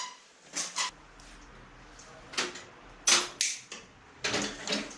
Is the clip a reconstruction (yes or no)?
no